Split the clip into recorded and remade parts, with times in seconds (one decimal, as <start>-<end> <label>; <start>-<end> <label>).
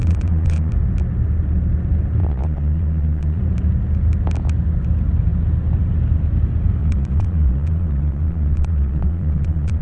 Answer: 0.0-0.7 remade; 0.7-2.2 recorded; 2.2-3.4 remade; 3.4-6.8 recorded; 6.8-9.8 remade